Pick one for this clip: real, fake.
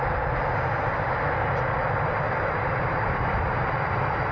real